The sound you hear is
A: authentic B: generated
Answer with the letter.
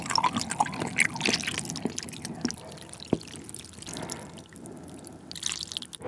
A